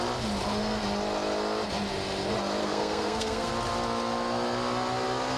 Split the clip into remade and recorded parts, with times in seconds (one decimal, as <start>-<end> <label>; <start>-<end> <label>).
0.0-2.6 recorded; 2.6-3.5 remade; 3.5-5.4 recorded